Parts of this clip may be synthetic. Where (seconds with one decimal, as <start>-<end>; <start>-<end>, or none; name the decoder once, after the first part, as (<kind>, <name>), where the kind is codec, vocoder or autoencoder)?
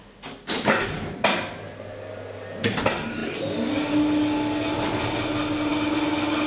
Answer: none